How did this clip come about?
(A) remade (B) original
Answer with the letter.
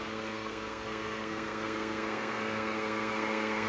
A